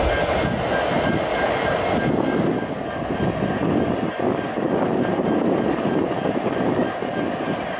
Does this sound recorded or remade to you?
recorded